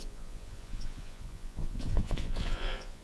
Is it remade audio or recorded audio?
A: remade